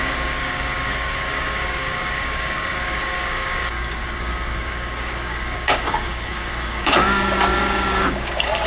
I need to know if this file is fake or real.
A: fake